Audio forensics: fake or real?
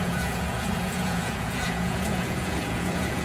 fake